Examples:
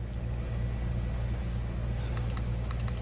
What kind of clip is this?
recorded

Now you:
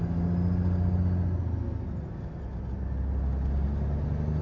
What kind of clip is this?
recorded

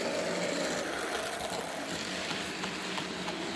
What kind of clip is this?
recorded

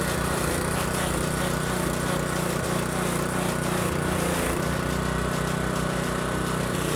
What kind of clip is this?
recorded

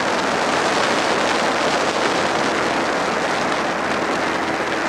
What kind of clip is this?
recorded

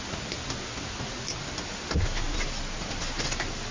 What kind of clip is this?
recorded